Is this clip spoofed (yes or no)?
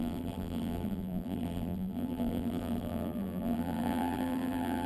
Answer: yes